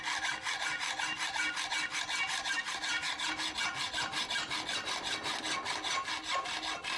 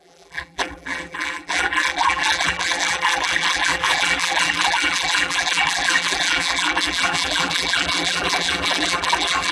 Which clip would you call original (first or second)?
first